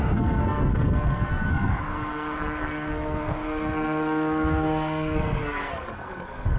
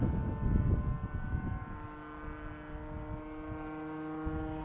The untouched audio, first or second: second